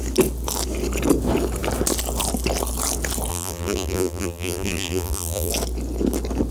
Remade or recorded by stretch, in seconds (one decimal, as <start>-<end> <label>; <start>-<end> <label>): 0.0-3.3 recorded; 3.3-5.5 remade; 5.5-6.5 recorded

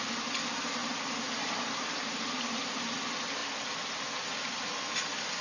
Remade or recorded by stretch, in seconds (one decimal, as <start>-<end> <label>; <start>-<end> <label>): 0.0-0.8 recorded; 0.8-2.9 remade; 2.9-5.4 recorded